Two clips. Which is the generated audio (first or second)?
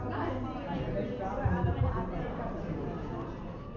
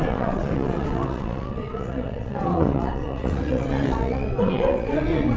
second